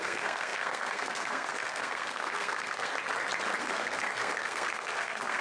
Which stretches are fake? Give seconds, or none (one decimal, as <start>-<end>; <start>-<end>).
0.0-2.9; 3.6-5.4